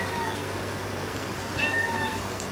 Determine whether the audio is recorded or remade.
remade